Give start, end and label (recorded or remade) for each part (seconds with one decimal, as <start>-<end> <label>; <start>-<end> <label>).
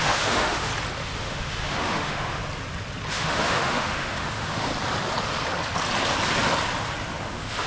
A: 0.0-0.7 remade; 0.7-1.2 recorded; 1.2-2.4 remade; 2.4-3.1 recorded; 3.1-4.7 remade; 4.7-7.2 recorded; 7.2-7.7 remade